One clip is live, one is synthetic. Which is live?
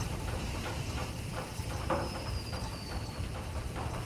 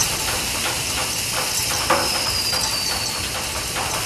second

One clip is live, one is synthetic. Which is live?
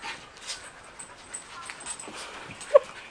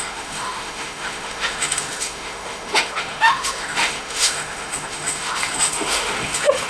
first